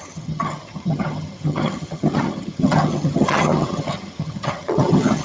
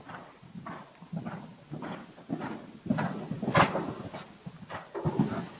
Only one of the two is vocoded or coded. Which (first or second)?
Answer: first